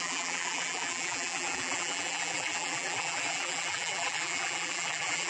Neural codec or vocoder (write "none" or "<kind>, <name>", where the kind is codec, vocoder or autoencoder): vocoder, BigVGAN v2